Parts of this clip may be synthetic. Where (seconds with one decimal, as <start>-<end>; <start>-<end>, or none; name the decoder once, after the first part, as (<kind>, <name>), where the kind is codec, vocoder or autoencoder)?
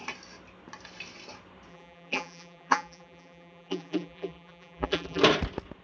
1.7-5.2 (vocoder, BigVGAN v2)